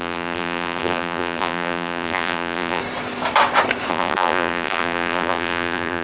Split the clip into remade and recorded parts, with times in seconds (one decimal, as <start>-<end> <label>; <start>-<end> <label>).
0.0-2.8 remade; 2.8-3.9 recorded; 3.9-6.0 remade